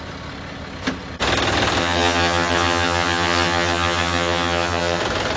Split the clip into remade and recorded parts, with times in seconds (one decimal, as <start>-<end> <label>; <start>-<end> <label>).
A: 0.0-1.8 recorded; 1.8-5.0 remade; 5.0-5.4 recorded